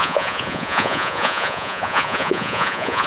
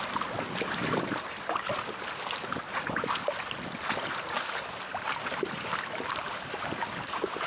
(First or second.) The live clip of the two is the second